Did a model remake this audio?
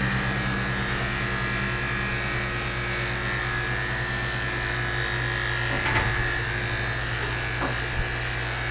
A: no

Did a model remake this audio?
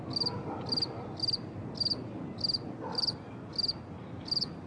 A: no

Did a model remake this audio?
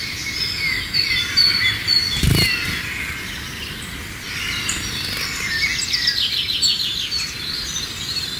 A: no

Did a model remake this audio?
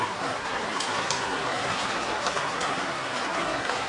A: yes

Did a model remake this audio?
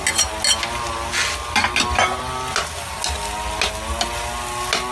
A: no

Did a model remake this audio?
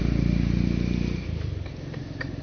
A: no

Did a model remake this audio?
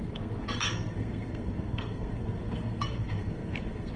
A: yes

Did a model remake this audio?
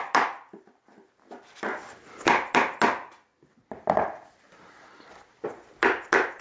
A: no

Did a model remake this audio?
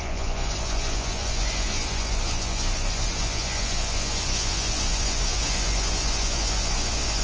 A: yes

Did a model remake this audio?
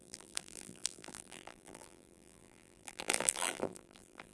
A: yes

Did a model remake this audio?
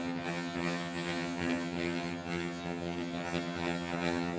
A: yes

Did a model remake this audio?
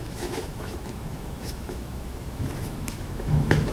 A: yes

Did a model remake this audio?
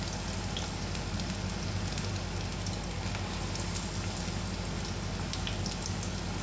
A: no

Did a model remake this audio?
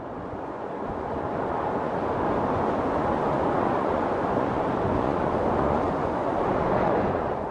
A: yes